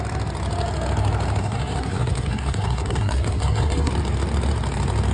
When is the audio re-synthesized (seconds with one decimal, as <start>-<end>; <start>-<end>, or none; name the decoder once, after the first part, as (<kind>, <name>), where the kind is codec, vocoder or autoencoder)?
1.4-3.9 (codec, SNAC)